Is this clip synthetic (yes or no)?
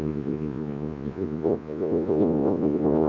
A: yes